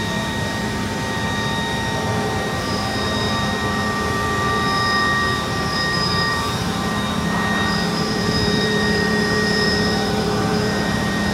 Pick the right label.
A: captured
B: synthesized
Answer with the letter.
B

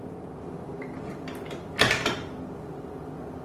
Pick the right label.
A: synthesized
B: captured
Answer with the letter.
A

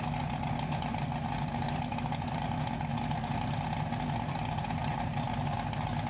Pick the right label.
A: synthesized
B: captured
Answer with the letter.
B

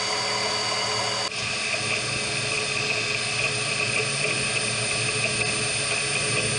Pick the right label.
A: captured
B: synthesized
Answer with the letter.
A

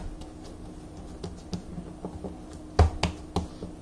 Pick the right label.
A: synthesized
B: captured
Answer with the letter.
B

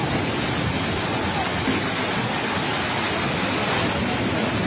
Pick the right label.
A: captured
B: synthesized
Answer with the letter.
A